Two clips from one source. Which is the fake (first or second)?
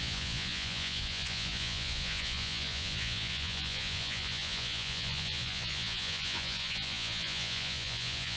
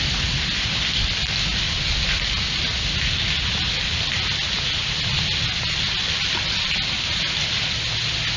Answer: first